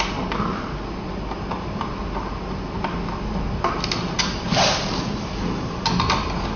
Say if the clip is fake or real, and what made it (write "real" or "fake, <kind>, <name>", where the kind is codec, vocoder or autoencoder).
real